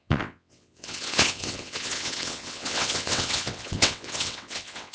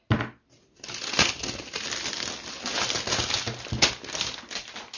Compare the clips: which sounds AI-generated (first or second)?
first